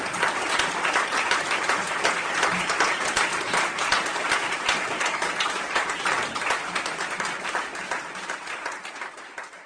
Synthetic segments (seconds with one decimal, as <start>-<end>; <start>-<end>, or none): 0.0-3.9; 4.5-7.7; 9.0-9.7